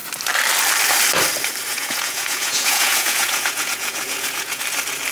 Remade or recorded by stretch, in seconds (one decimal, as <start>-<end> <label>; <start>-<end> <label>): 0.0-1.7 recorded; 1.7-4.6 remade; 4.6-5.1 recorded